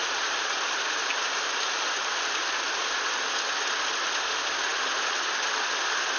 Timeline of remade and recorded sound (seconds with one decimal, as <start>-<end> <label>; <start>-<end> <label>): 0.0-6.2 recorded